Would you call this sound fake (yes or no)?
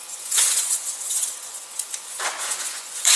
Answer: yes